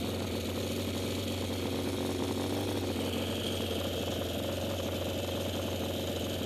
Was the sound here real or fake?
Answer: real